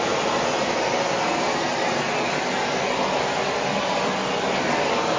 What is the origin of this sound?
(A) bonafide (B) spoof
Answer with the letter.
A